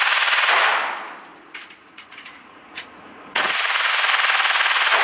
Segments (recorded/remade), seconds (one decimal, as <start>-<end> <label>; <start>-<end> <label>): 0.0-1.3 recorded; 1.3-3.9 remade; 3.9-5.0 recorded